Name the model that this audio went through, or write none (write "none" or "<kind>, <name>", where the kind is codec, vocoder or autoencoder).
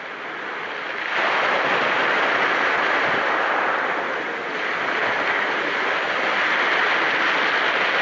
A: none